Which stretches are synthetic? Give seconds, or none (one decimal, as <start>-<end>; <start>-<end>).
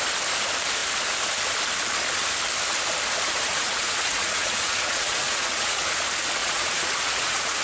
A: 3.5-5.8; 6.4-7.6